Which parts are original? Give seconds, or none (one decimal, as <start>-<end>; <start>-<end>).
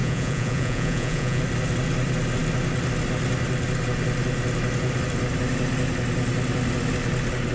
1.4-7.5